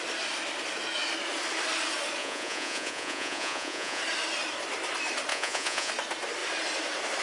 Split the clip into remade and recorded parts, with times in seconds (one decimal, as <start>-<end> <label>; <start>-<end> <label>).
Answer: 0.0-2.2 recorded; 2.2-4.0 remade; 4.0-5.3 recorded; 5.3-5.9 remade; 5.9-7.2 recorded